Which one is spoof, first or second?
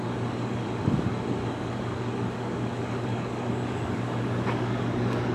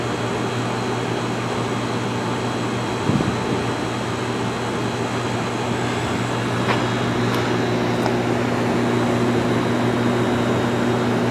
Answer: first